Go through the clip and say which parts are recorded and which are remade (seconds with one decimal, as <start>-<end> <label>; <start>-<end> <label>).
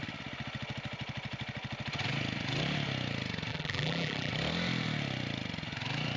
0.0-3.5 recorded; 3.5-4.3 remade; 4.3-6.2 recorded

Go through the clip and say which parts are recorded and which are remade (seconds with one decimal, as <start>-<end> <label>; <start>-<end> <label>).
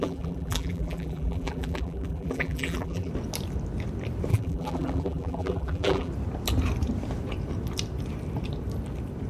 0.0-3.1 remade; 3.1-4.3 recorded; 4.3-6.1 remade; 6.1-9.3 recorded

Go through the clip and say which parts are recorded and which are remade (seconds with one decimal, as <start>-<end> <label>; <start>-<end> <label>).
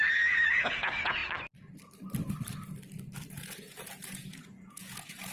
0.0-1.2 remade; 1.2-3.3 recorded; 3.3-5.3 remade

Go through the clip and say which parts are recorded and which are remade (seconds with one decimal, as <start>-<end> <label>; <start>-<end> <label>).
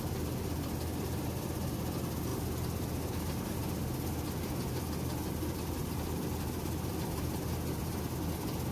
0.0-8.7 recorded